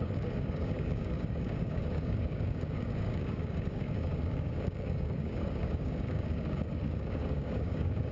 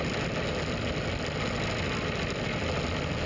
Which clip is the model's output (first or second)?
first